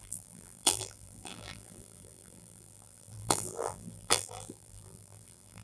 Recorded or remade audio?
remade